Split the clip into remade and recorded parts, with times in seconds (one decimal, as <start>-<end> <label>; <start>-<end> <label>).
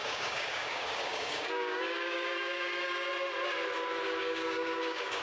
0.0-3.1 remade; 3.1-4.2 recorded; 4.2-5.2 remade